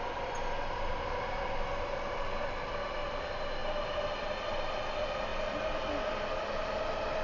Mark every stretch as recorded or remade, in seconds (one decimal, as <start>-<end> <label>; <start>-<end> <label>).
0.0-7.2 recorded